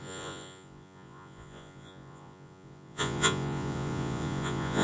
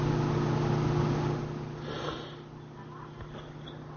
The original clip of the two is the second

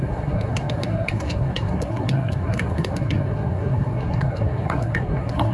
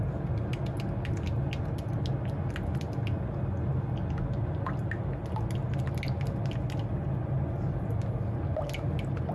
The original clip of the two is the second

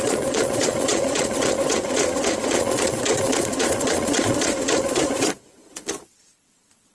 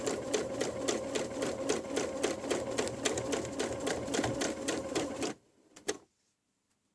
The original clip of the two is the second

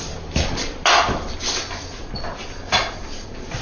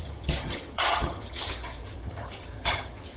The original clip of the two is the first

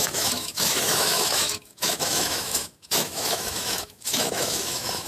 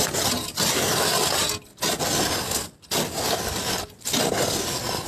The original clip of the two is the second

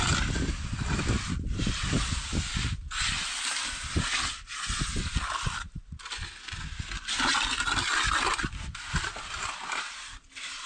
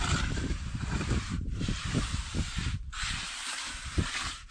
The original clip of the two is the first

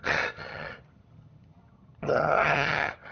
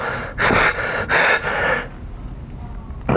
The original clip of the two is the second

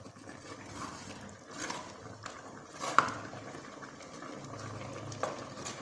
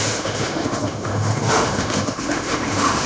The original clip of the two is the first